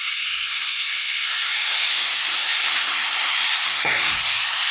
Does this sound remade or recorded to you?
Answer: remade